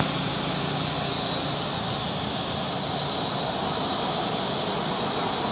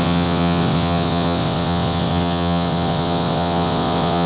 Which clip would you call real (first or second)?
first